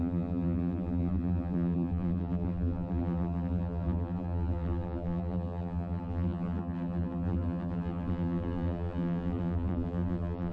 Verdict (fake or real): fake